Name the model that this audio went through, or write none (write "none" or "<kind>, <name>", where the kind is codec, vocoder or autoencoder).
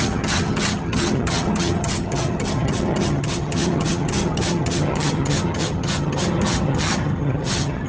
vocoder, HiFi-GAN